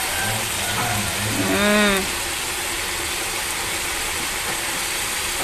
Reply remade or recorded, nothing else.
recorded